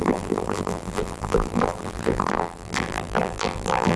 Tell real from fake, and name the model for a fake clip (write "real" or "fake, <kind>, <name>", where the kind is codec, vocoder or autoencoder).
fake, vocoder, BigVGAN v2